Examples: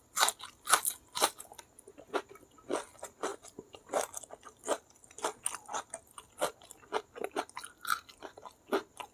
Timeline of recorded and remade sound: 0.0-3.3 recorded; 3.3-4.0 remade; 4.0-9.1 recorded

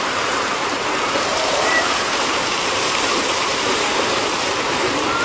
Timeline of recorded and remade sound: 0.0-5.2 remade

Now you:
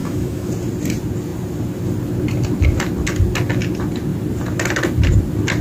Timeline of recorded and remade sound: 0.0-0.5 remade; 0.5-5.6 recorded